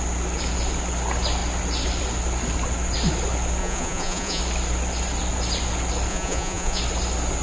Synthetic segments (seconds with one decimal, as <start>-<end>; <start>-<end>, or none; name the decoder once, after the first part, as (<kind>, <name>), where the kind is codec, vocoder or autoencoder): 3.6-4.4 (vocoder, Vocos); 6.1-6.8